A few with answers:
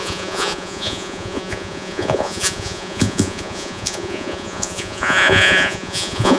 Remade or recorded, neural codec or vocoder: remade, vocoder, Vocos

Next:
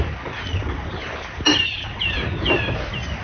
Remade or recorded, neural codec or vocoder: recorded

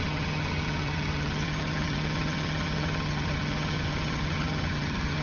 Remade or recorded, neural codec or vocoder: remade, vocoder, HiFi-GAN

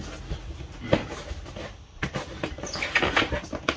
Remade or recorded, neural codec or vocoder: recorded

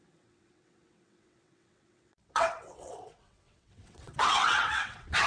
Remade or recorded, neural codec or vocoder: remade, vocoder, WaveNeXt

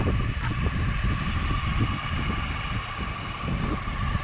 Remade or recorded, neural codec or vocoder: recorded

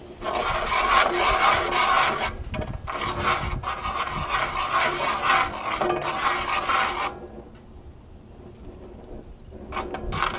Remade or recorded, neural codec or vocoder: recorded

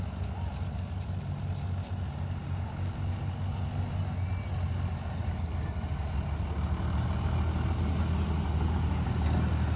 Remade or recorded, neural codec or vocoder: recorded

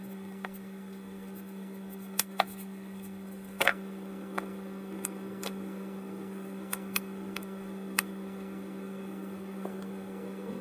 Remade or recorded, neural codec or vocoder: remade, codec, SNAC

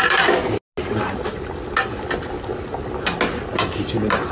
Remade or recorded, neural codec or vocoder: recorded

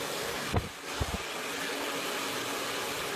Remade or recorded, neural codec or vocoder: recorded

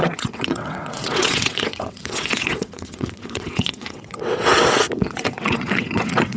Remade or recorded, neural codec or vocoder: remade, vocoder, WaveNeXt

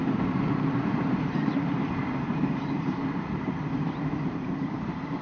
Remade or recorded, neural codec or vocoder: remade, vocoder, BigVGAN v2